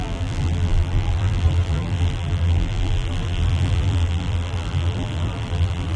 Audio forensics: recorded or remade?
remade